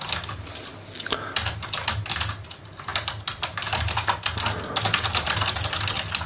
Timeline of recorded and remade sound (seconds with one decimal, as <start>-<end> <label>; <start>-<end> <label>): 0.0-6.3 recorded